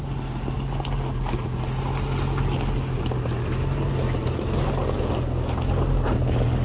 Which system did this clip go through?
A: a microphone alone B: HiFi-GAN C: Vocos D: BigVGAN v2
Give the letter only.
A